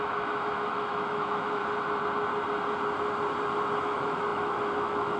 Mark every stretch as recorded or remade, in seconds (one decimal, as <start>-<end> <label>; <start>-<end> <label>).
0.0-1.6 remade; 1.6-3.8 recorded; 3.8-5.2 remade